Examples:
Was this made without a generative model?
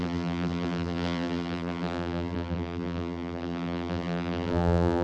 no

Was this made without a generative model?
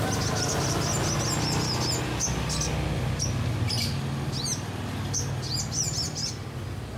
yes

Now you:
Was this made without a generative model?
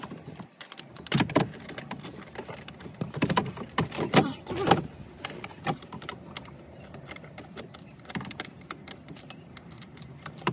no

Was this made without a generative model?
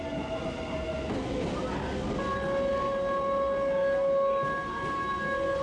yes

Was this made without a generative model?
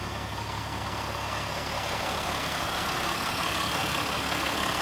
no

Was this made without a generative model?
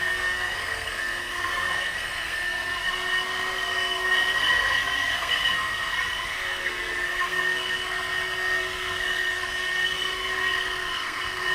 no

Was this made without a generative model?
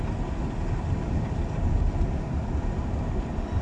yes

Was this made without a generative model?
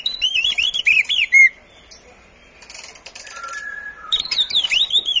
no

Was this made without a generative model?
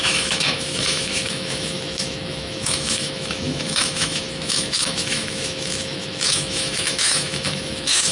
no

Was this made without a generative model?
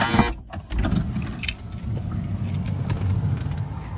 yes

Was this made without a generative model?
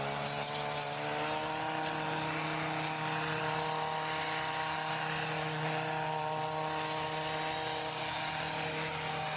yes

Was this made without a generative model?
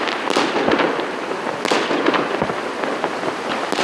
yes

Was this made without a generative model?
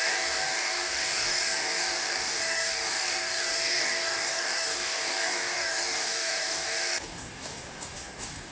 no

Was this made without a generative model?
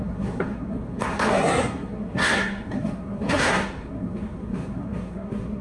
no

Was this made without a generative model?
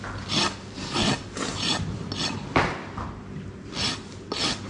yes